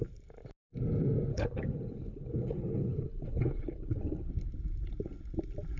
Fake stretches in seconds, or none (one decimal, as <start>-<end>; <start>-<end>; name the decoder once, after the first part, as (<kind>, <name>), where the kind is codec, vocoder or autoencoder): 1.3-4.3 (codec, HILCodec)